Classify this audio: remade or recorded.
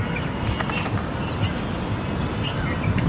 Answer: recorded